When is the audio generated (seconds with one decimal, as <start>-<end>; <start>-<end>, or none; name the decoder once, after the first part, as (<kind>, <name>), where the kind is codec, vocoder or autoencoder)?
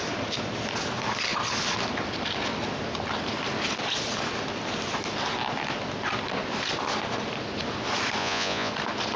8.2-8.7 (vocoder, Vocos)